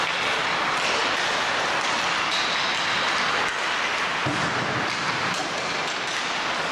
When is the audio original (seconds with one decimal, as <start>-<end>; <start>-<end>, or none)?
0.0-6.7